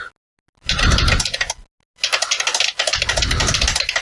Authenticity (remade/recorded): recorded